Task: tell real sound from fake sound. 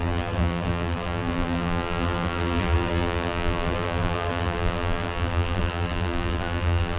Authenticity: fake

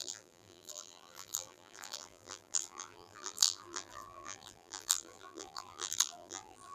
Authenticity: fake